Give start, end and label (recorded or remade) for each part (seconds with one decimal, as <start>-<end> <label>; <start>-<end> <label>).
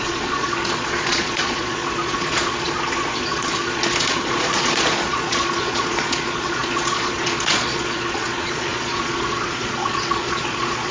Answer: 0.0-10.9 remade